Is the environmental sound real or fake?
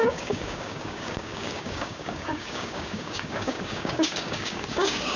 fake